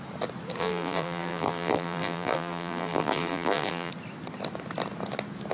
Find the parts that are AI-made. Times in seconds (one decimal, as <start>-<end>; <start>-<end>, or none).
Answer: 0.6-3.9